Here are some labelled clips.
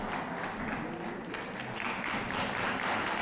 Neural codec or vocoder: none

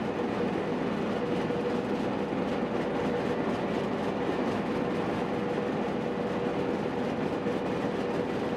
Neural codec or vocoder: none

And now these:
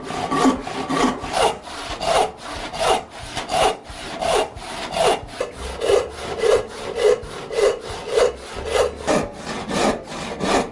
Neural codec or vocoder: none